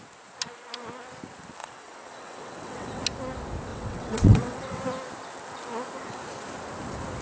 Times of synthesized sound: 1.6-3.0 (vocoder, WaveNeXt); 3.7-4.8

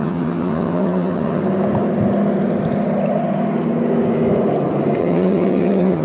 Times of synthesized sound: 0.0-1.4 (vocoder, HiFi-GAN); 5.0-6.0

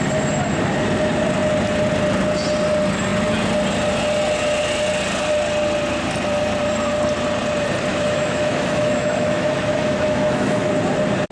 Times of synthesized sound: 7.9-10.7 (autoencoder, DAC-VAE)

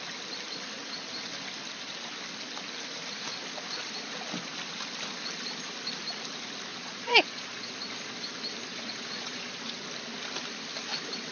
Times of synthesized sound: 6.7-7.7 (vocoder, Vocos); 8.7-9.6

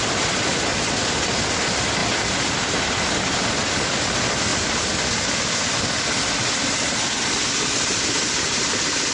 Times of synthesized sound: none

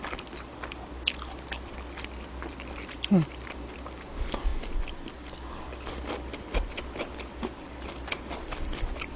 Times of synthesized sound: none

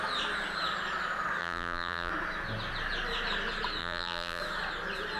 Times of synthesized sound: 1.4-2.1 (vocoder, BigVGAN v2); 3.8-4.4

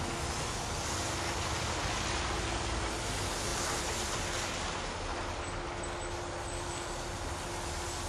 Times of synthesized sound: none